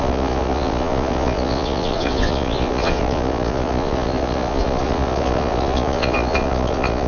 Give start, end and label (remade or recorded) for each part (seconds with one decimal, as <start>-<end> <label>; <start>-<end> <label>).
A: 0.0-7.1 remade